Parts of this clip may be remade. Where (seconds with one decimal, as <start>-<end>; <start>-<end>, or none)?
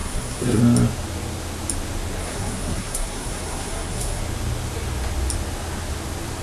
0.0-0.6; 2.2-4.2